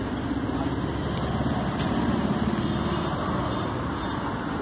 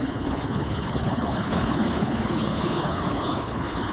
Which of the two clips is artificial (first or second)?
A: second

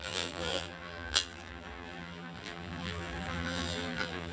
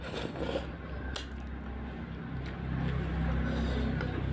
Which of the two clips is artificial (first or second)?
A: first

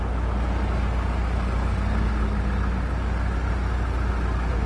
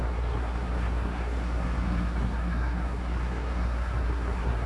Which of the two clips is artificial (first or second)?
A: second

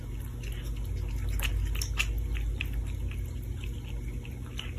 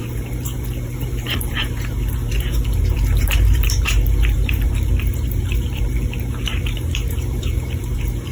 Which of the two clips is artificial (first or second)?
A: second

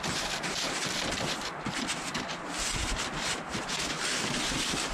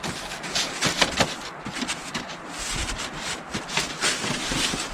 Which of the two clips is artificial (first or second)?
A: first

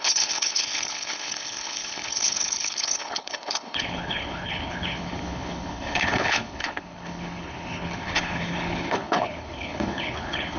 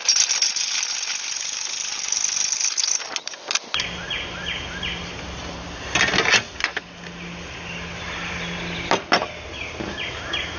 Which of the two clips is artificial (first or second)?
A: first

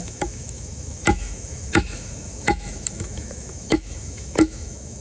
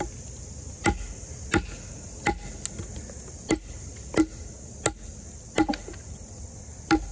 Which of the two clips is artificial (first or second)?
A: first